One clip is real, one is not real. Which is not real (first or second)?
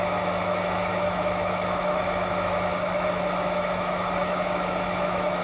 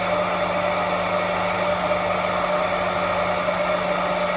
first